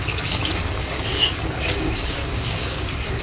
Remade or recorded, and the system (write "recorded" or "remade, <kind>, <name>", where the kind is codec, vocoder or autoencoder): remade, codec, DAC